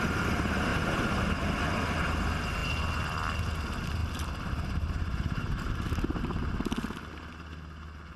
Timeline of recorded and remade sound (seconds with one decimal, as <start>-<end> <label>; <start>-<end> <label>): 0.0-4.0 recorded; 4.0-6.2 remade; 6.2-8.2 recorded